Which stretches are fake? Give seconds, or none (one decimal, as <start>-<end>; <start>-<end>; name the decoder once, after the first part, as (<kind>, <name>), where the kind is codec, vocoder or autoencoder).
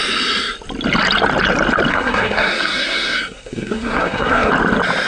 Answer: 1.9-4.5 (codec, SNAC)